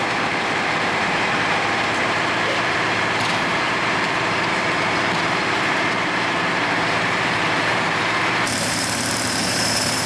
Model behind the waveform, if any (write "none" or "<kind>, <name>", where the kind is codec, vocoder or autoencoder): vocoder, BigVGAN v2